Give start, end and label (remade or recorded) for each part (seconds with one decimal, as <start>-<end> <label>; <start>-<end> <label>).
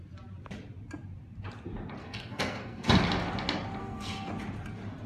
0.0-2.0 recorded; 2.0-2.9 remade; 2.9-3.8 recorded; 3.8-4.3 remade; 4.3-5.1 recorded